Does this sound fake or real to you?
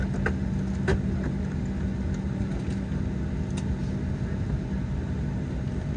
real